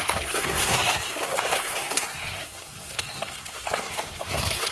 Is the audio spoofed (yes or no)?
yes